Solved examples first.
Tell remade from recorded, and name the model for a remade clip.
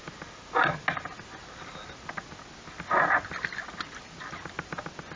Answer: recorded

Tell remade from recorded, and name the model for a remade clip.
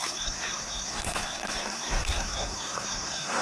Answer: remade, codec, SNAC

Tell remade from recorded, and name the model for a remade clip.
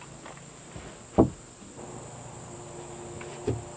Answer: recorded